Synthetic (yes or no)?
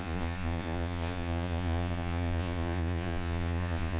yes